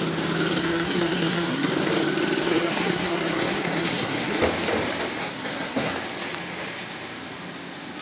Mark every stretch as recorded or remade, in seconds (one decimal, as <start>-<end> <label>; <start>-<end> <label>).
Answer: 0.0-0.6 recorded; 0.6-1.7 remade; 1.7-2.4 recorded; 2.4-4.4 remade; 4.4-5.2 recorded; 5.2-5.9 remade; 5.9-8.0 recorded